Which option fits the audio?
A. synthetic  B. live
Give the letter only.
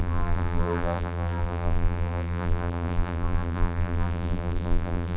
A